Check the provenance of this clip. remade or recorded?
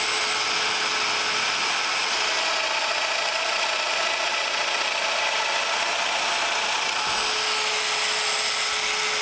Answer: recorded